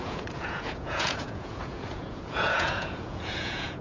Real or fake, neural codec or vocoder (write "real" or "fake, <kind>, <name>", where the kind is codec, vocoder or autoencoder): fake, vocoder, Vocos